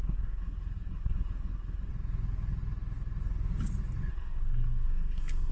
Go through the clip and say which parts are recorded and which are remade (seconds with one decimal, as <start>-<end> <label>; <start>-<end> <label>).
0.0-1.9 remade; 1.9-4.1 recorded; 4.1-5.5 remade